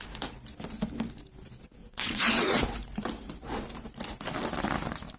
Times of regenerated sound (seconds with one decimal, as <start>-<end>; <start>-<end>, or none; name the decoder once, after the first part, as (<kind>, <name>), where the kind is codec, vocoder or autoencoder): 1.8-2.6 (vocoder, WaveNeXt)